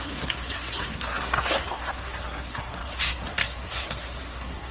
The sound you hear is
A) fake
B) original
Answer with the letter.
A